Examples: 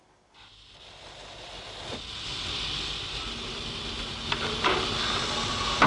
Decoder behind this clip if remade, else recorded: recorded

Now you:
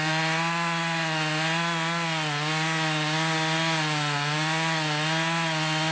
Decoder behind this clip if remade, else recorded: recorded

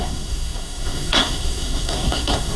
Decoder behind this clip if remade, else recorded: remade, codec, SNAC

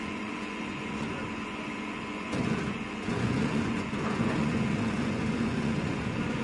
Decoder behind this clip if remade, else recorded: remade, vocoder, Vocos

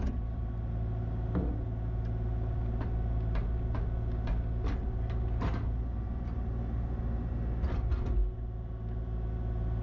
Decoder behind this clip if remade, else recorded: recorded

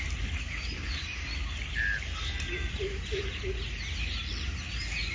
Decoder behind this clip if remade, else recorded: recorded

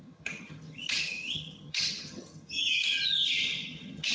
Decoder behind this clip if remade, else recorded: remade, vocoder, HiFi-GAN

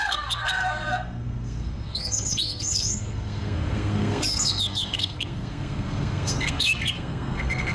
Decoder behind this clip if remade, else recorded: remade, codec, SNAC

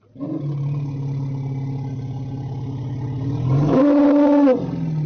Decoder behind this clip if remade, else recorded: recorded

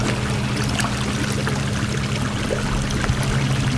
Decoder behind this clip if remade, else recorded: recorded